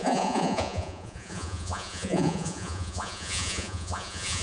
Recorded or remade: remade